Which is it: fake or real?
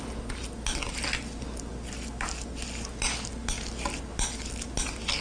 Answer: real